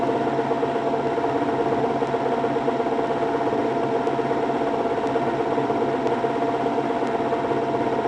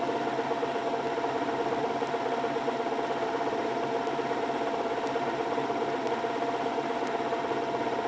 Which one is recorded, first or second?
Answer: first